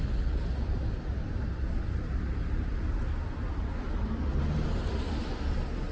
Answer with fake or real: real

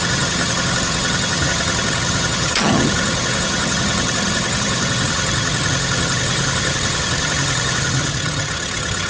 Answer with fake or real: fake